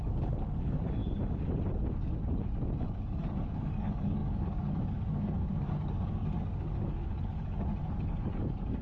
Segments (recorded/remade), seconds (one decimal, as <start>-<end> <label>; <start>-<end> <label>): 0.0-1.0 remade; 1.0-2.8 recorded; 2.8-8.8 remade